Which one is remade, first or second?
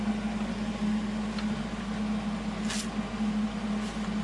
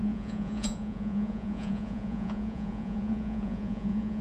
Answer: second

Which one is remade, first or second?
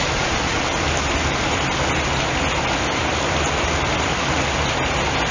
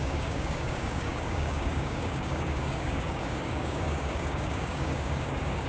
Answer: second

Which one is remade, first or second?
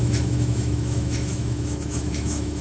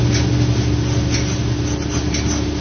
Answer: first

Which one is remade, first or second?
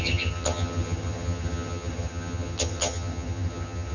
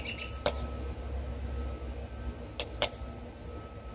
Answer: first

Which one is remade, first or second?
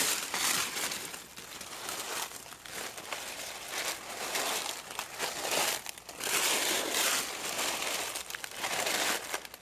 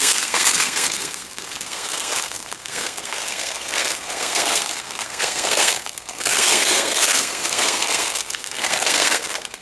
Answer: second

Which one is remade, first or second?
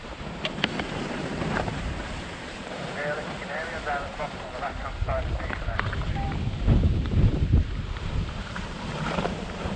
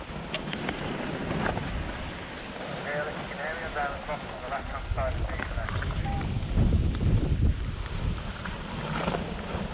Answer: first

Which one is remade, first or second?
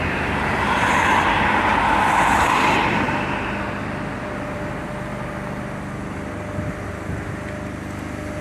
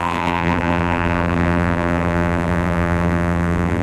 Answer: second